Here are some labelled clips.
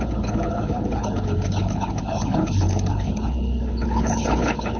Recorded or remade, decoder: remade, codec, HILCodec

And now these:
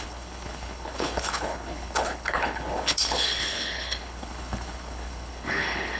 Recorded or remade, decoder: remade, codec, HILCodec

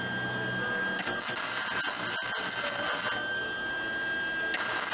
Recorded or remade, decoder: recorded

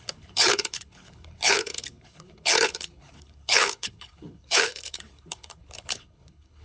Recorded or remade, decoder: remade, codec, HILCodec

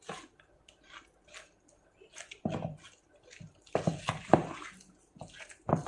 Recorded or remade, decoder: recorded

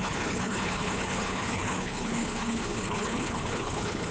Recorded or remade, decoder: remade, codec, HILCodec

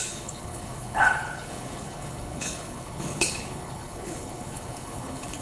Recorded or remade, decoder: remade, codec, HILCodec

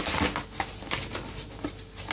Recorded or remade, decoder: recorded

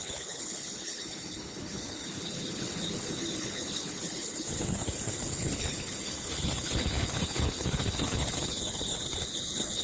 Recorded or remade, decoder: remade, codec, HILCodec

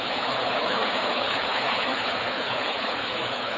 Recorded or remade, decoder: remade, codec, HILCodec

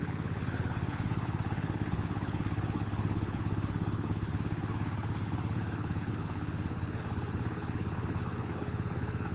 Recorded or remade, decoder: remade, codec, HILCodec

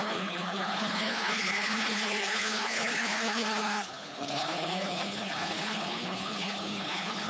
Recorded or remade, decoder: remade, codec, HILCodec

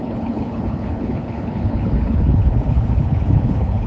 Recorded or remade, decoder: remade, codec, HILCodec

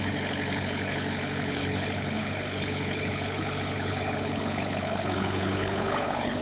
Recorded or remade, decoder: remade, codec, HILCodec